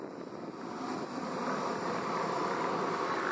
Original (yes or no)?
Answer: yes